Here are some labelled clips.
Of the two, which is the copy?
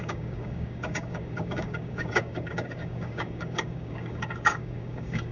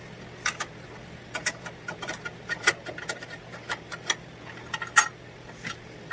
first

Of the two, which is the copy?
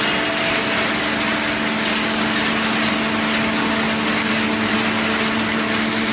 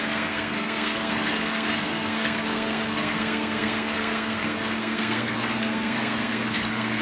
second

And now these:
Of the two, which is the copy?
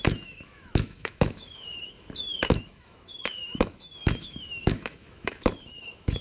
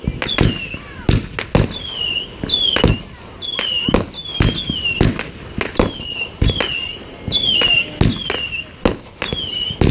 first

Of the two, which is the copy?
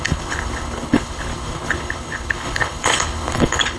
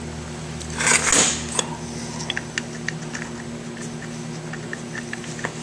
first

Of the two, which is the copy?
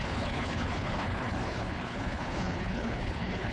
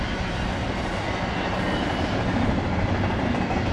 first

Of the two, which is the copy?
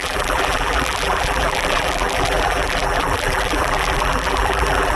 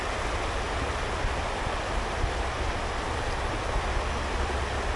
first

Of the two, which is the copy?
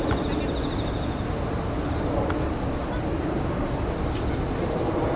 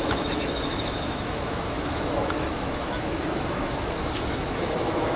second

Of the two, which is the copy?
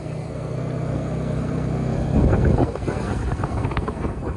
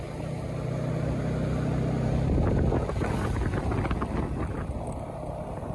first